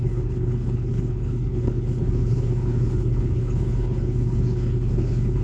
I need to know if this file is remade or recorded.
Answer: remade